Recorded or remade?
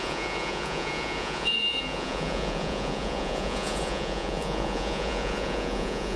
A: remade